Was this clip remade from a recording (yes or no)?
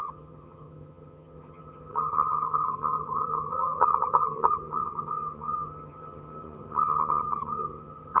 yes